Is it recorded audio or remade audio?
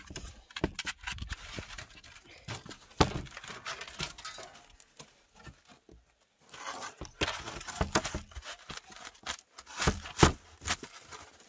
recorded